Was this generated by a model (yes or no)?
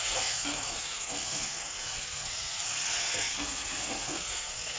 yes